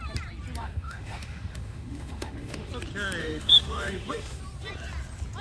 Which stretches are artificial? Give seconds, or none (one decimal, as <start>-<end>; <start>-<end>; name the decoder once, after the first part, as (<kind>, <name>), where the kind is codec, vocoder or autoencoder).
0.6-2.7 (autoencoder, DAC-VAE); 3.2-4.4